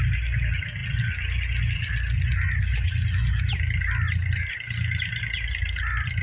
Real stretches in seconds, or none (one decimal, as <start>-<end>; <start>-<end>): 0.0-6.2